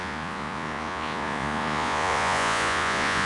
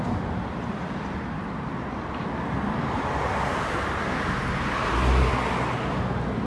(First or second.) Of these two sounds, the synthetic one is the first